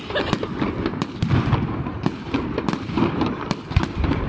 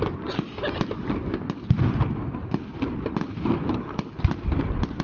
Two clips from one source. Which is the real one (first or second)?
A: second